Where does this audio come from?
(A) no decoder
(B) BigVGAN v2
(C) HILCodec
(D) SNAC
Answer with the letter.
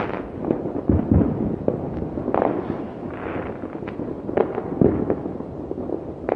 A